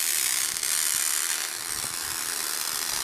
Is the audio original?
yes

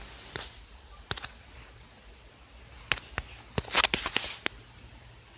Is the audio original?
yes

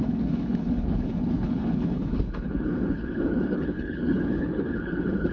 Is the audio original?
no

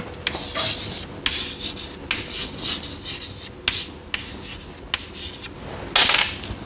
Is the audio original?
yes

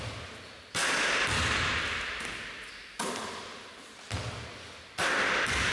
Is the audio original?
yes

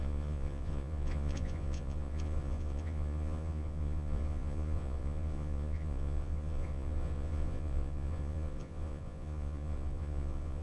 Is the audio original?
no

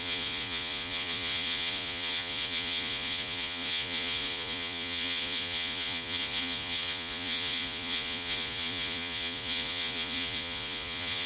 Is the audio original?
no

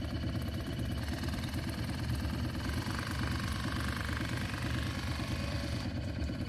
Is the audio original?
no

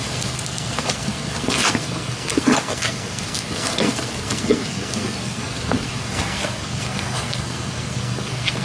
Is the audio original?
no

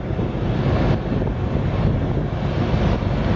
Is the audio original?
yes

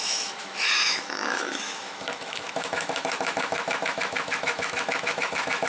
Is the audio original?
no